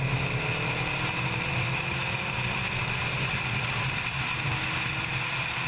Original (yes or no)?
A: yes